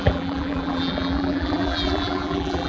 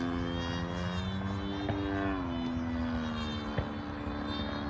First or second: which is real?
second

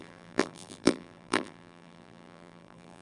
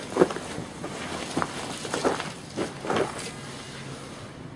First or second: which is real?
second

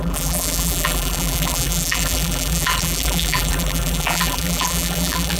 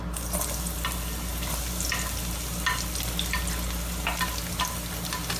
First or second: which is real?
second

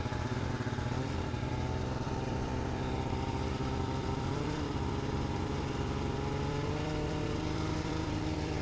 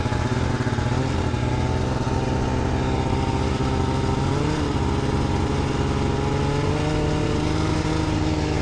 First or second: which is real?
second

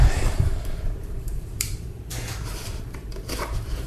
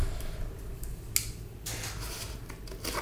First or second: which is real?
second